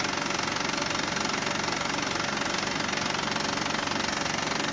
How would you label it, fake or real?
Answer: real